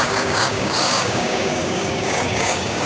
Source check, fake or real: fake